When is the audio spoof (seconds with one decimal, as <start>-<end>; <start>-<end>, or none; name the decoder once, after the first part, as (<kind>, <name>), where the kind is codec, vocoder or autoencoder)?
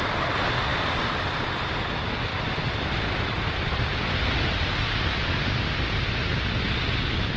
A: none